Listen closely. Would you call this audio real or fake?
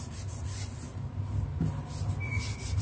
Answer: real